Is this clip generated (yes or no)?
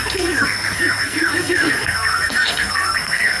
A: yes